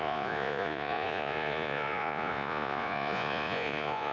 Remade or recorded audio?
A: remade